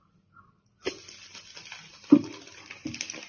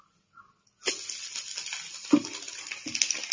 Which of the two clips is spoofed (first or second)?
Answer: first